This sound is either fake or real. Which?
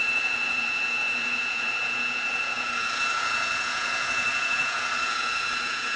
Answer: fake